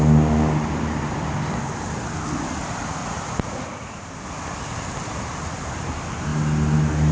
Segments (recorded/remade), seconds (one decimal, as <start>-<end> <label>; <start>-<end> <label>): 0.0-3.0 recorded; 3.0-4.1 remade; 4.1-7.1 recorded